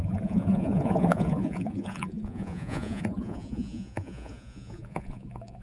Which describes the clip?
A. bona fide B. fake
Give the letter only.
B